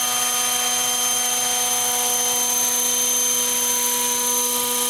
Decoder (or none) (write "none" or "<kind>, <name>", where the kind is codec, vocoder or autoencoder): none